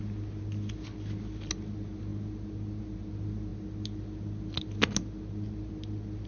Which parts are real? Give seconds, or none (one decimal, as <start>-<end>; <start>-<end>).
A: 0.0-6.3